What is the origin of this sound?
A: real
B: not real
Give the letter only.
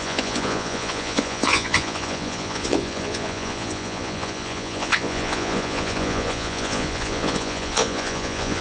B